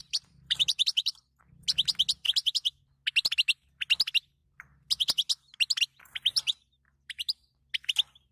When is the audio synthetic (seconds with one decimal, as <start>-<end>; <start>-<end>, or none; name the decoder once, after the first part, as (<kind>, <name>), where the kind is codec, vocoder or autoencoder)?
0.0-1.4 (vocoder, BigVGAN v2); 6.3-7.6